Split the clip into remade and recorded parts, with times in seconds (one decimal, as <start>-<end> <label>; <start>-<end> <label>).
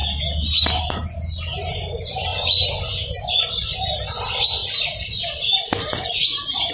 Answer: 0.0-4.6 recorded; 4.6-5.6 remade; 5.6-6.7 recorded